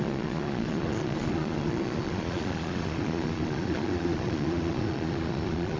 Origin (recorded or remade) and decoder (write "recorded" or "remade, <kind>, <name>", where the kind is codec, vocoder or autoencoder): remade, vocoder, Vocos